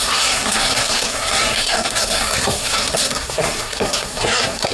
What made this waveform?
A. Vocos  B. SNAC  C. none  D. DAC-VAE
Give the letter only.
B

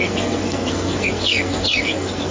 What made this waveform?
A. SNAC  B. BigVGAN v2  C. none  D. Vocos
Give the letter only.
A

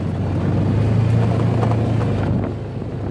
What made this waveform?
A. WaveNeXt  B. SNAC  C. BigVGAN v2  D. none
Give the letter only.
D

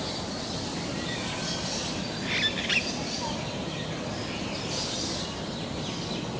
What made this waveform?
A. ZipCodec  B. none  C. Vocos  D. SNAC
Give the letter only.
B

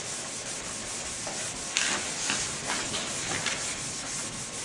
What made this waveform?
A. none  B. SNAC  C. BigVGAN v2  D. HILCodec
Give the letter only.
A